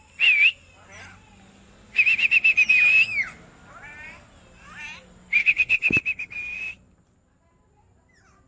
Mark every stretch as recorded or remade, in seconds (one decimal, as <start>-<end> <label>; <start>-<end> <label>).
0.0-5.4 recorded; 5.4-5.9 remade; 5.9-8.5 recorded